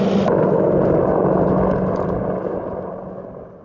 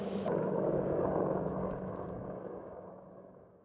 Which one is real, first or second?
first